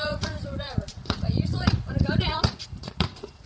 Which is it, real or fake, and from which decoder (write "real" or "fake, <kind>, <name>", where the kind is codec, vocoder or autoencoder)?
fake, vocoder, Vocos